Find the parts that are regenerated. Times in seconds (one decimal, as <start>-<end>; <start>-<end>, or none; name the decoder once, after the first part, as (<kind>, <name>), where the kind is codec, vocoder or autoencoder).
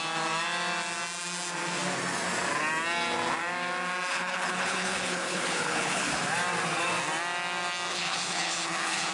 4.1-6.1 (codec, HILCodec); 7.9-9.1